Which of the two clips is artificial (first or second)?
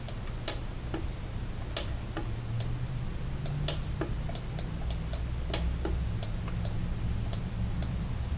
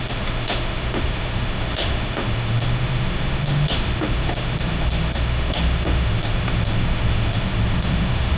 second